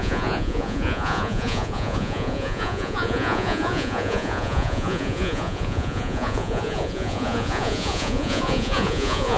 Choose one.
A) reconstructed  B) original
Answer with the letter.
A